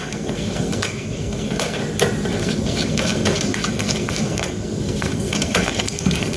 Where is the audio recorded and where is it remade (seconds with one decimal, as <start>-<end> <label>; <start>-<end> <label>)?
0.0-1.8 remade; 1.8-2.4 recorded; 2.4-6.4 remade